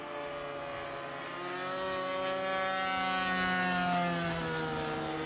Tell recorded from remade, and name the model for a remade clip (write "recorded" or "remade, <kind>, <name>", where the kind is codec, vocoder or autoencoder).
recorded